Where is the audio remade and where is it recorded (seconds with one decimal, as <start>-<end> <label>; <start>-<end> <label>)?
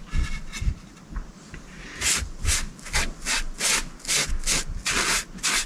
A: 0.0-5.7 recorded